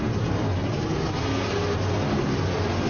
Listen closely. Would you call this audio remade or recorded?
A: recorded